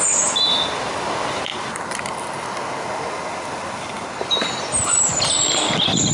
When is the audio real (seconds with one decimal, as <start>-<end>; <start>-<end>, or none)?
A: 0.0-6.1